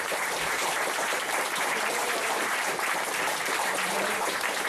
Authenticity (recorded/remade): remade